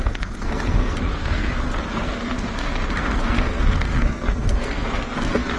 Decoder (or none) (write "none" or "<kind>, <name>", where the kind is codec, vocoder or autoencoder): codec, SNAC